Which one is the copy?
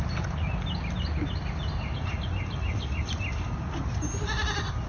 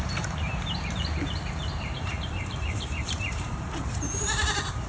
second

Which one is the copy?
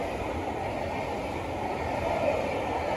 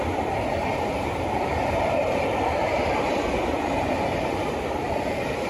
second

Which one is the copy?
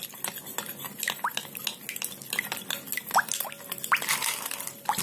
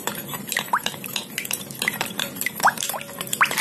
second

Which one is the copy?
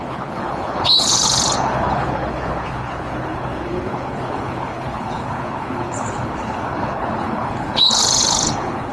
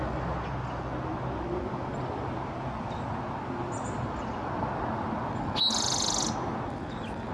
first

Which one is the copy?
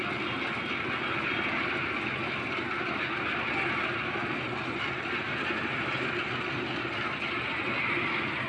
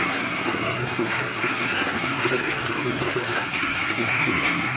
second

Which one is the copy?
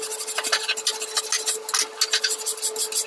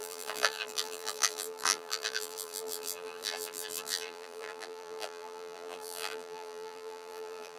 second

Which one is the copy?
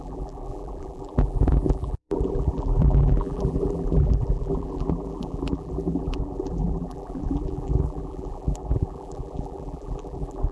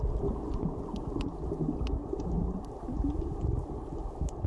first